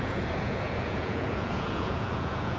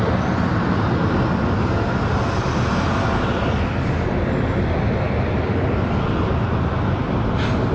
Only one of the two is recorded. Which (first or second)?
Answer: second